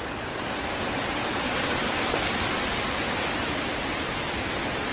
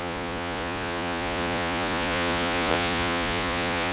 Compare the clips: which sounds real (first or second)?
first